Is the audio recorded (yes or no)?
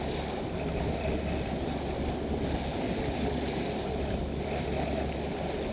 yes